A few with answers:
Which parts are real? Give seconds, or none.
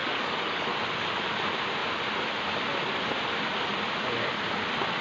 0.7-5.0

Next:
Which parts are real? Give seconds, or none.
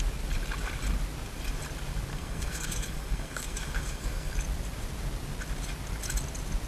0.0-2.1; 4.3-6.7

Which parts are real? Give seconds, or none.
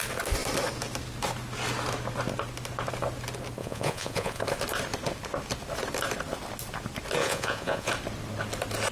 0.0-3.6; 4.4-7.2; 7.9-8.9